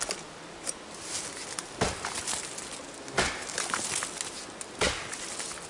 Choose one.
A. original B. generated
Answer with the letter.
A